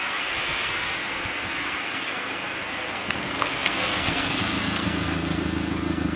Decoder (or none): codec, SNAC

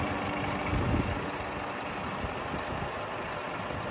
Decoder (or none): none